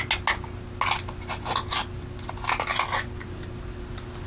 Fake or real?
real